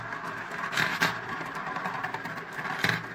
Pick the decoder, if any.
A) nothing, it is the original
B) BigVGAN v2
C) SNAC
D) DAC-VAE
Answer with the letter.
A